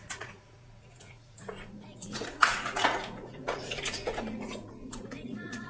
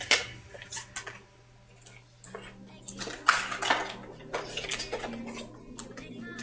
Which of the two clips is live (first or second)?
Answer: second